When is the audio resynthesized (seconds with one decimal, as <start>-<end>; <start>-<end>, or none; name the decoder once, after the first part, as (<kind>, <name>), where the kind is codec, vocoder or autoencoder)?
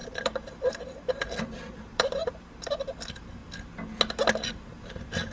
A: 0.0-3.4 (vocoder, BigVGAN v2); 4.5-5.3